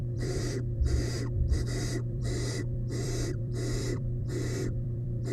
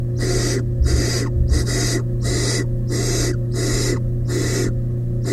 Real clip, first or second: second